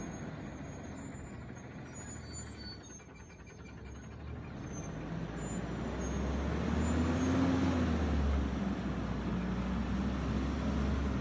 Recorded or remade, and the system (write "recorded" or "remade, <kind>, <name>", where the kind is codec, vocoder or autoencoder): recorded